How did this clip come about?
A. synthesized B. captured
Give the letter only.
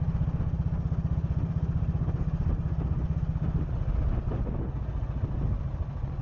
B